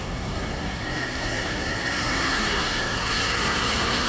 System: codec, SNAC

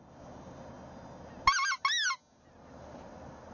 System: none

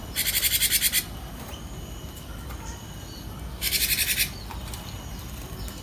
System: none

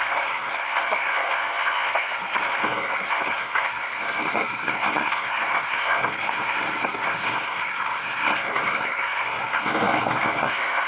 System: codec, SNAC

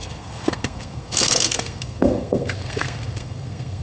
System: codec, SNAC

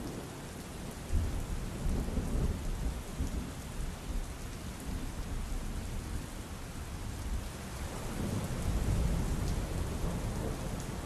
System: none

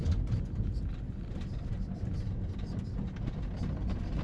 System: none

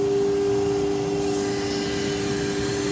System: none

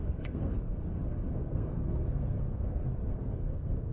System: codec, SNAC